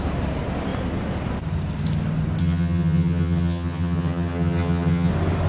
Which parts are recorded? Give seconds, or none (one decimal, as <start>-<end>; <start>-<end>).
0.0-2.4; 5.1-5.5